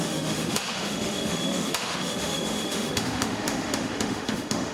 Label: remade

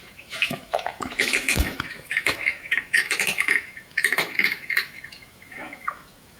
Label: remade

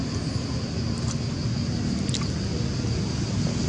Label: recorded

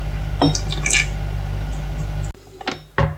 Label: recorded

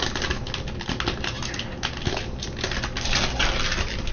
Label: recorded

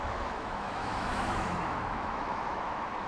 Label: remade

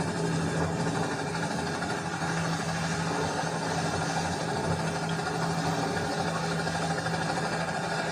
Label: recorded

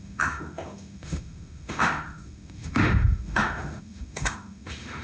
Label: remade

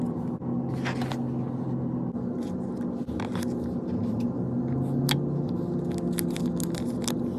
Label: recorded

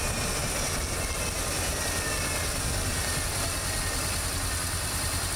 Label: recorded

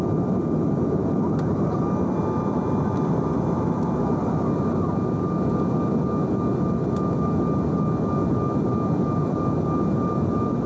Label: recorded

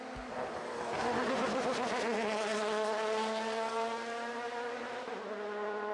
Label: recorded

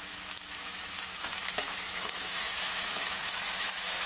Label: remade